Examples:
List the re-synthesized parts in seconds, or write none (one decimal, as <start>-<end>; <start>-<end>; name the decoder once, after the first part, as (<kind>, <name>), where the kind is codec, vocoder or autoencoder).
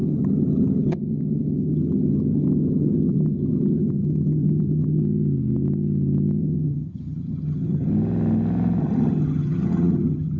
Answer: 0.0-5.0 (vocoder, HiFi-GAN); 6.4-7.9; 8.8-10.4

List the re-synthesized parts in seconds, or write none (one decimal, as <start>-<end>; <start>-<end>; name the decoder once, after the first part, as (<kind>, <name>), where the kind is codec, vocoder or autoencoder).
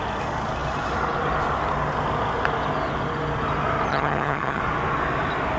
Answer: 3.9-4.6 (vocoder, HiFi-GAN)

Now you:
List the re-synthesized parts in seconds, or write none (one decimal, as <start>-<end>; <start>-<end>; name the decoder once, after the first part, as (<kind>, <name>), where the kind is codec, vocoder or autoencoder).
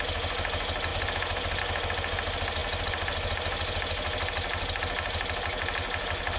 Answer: none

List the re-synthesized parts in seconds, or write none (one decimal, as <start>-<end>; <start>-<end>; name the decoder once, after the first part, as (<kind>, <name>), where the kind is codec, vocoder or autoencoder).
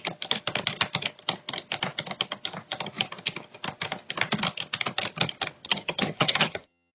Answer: 5.6-6.9 (vocoder, HiFi-GAN)